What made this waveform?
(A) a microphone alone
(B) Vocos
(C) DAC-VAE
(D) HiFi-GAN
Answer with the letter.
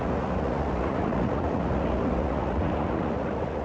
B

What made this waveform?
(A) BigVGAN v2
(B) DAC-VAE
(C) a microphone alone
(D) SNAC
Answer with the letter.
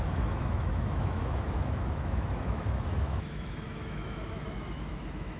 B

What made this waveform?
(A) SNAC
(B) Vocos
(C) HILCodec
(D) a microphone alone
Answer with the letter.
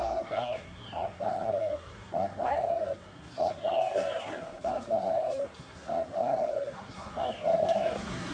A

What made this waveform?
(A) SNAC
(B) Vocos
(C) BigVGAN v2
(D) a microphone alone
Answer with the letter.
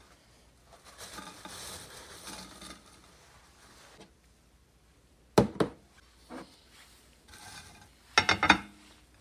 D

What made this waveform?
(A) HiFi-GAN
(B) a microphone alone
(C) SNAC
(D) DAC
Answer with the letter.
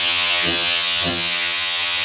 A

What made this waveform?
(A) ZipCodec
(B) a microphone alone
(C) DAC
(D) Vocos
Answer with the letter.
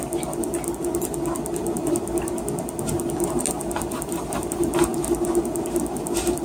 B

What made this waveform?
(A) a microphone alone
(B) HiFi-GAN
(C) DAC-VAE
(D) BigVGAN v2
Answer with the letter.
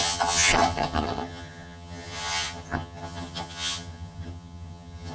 B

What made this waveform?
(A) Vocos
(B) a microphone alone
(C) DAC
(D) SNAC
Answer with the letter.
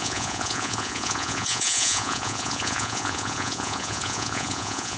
A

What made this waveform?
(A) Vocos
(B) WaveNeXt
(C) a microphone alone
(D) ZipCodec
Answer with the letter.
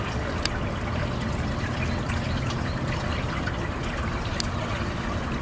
C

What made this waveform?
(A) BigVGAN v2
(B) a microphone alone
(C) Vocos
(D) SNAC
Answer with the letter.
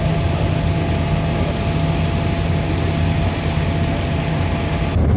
B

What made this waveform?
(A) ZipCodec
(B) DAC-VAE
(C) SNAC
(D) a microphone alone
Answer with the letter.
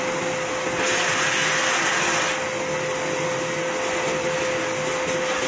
D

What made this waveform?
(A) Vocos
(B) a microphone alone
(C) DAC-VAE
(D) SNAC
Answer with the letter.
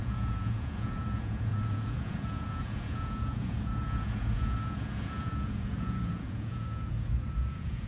A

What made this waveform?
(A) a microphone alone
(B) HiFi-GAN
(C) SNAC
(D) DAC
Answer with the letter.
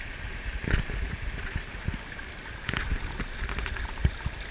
A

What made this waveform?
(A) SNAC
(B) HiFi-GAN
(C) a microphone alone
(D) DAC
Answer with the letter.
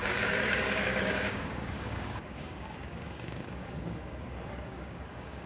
D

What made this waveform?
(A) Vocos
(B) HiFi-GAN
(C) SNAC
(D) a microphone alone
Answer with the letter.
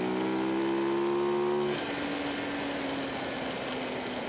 D